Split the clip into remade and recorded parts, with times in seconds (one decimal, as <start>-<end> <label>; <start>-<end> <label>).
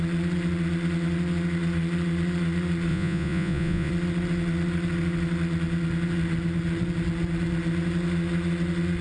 0.0-2.9 recorded; 2.9-3.9 remade; 3.9-9.0 recorded